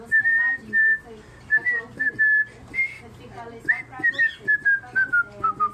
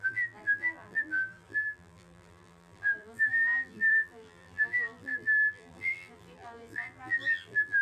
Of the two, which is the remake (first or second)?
second